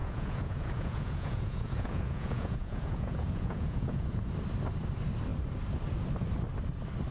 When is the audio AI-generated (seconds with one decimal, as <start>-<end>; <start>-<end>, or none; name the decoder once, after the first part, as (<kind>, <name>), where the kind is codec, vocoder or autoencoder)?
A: 0.0-4.3 (vocoder, Vocos)